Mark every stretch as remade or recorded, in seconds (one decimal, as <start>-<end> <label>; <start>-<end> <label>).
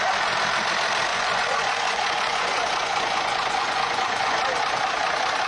0.0-1.1 recorded; 1.1-4.4 remade; 4.4-5.5 recorded